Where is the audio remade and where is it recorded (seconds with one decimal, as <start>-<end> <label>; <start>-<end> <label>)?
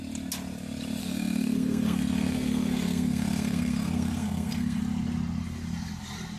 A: 0.0-1.0 recorded; 1.0-4.8 remade; 4.8-6.4 recorded